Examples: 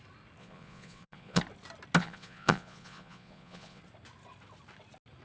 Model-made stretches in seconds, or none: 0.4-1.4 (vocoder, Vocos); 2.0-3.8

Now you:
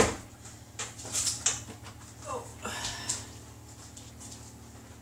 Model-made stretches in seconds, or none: none

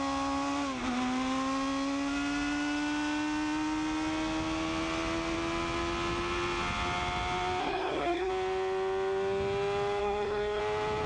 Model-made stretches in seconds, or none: 7.6-8.3 (codec, SNAC); 10.0-10.6

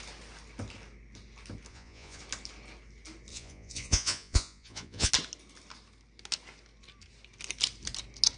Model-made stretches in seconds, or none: 1.7-2.2 (vocoder, Vocos); 3.3-5.1

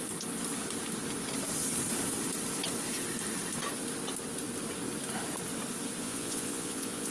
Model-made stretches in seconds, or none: 6.0-7.1 (vocoder, Vocos)

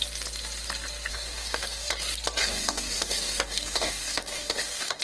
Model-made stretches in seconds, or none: 1.1-1.9 (codec, DAC); 2.4-5.0

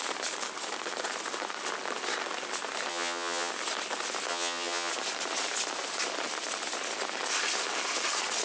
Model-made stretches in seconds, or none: 2.9-3.5 (vocoder, HiFi-GAN); 4.3-4.9